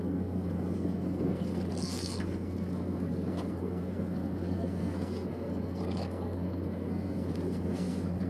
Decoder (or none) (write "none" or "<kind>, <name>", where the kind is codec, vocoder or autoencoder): codec, SNAC